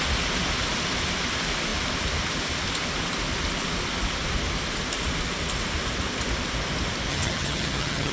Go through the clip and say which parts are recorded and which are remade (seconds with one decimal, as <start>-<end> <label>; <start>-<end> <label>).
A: 0.0-7.1 recorded; 7.1-8.1 remade